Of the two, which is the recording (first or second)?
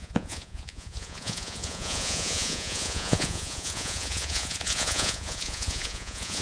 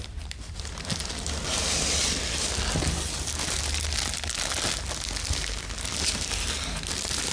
second